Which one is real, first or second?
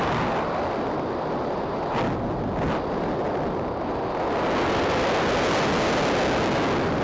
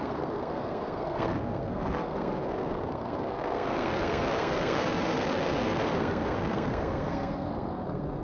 first